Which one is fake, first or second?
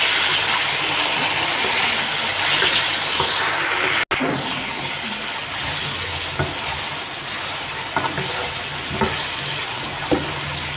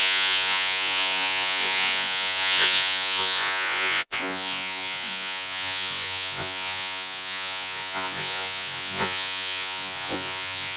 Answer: second